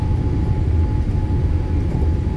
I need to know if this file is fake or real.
real